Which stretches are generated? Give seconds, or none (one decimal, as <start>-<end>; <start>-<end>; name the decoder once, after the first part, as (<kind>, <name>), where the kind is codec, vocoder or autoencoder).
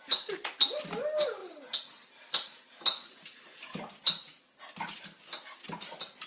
none